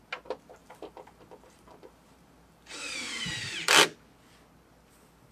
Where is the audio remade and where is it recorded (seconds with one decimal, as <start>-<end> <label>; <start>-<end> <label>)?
0.0-0.6 recorded; 0.6-3.8 remade; 3.8-5.3 recorded